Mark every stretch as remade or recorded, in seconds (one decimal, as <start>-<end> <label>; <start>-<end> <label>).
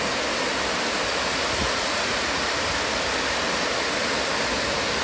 0.0-1.6 recorded; 1.6-2.4 remade; 2.4-5.0 recorded